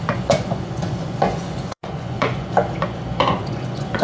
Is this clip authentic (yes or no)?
no